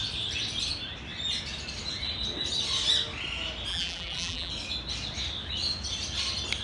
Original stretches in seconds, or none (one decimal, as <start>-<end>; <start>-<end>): 0.0-3.7; 4.5-6.6